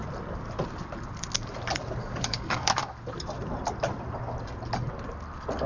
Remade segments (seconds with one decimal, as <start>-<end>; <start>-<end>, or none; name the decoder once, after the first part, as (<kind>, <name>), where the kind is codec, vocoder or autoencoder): 2.0-2.8 (codec, DAC)